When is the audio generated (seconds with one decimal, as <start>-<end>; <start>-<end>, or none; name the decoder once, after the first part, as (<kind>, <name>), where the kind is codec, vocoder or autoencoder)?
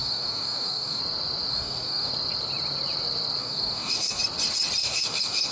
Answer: 0.0-1.0 (codec, DAC); 1.5-2.1; 3.4-4.2; 4.8-5.5